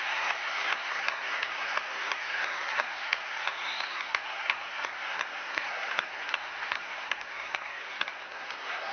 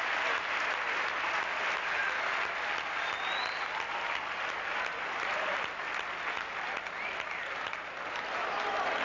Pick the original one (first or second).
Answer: second